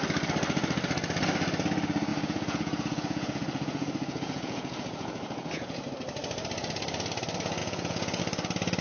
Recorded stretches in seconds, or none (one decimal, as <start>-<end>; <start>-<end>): 0.0-2.1; 5.9-7.6; 8.2-8.8